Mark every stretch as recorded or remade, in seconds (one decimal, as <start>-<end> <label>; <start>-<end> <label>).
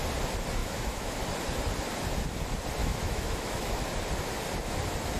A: 0.0-0.6 recorded; 0.6-1.2 remade; 1.2-2.8 recorded; 2.8-3.8 remade; 3.8-5.2 recorded